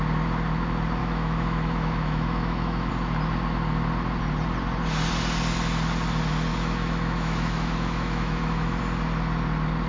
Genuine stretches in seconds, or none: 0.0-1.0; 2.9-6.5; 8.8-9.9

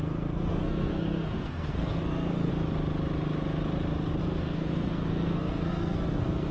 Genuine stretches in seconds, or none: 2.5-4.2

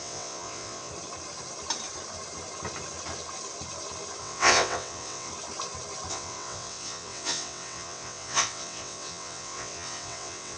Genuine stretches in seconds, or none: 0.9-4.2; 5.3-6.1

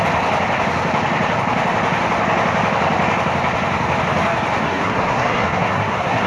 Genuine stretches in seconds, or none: 0.0-4.6

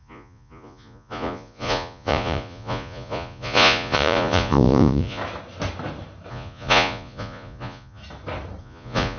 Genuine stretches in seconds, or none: 5.2-6.3; 8.0-8.6

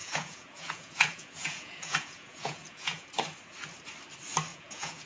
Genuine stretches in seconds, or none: 3.1-4.5

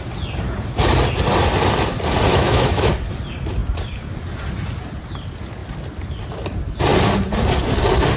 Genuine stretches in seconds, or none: 0.0-2.3; 2.9-8.2